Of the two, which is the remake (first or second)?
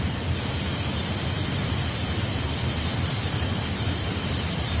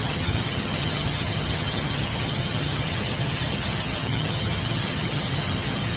second